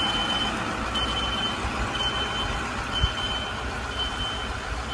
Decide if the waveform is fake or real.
real